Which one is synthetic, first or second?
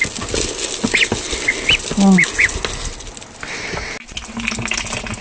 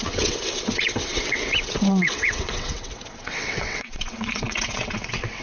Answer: second